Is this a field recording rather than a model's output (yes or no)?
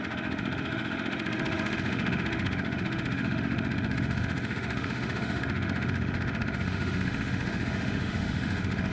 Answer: no